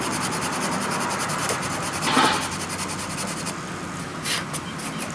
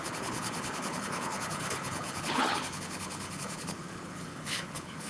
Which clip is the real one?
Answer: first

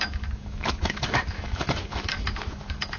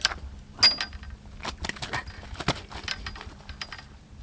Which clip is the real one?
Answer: second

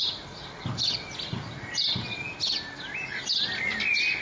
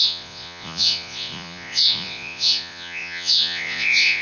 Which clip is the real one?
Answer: first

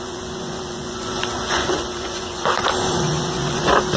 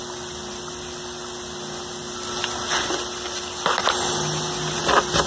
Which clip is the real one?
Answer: second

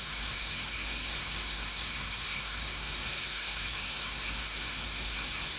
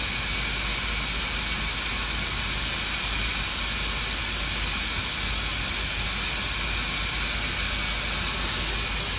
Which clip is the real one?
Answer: second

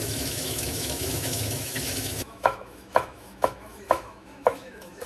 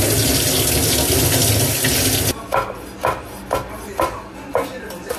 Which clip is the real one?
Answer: second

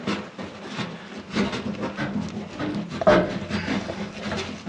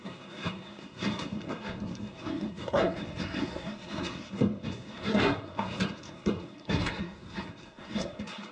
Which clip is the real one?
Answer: first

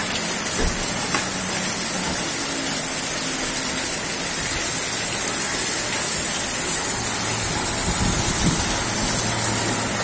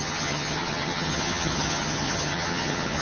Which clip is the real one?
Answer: first